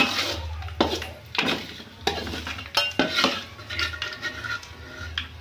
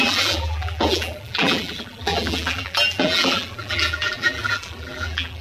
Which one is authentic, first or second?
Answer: first